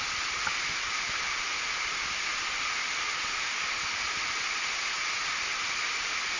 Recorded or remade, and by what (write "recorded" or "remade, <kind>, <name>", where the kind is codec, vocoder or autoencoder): recorded